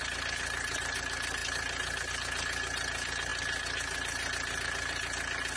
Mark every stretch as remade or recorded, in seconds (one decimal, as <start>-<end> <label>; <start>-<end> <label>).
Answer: 0.0-5.6 recorded